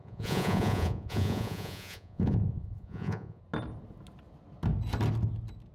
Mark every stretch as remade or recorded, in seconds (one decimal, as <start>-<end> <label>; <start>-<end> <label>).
0.0-3.4 remade; 3.4-5.7 recorded